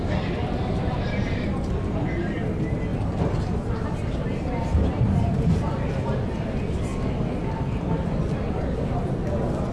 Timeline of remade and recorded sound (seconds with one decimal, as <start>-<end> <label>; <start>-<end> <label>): 0.0-0.4 recorded; 0.4-1.4 remade; 1.4-2.9 recorded; 2.9-5.6 remade; 5.6-9.7 recorded